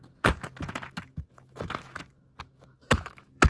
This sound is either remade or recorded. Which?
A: remade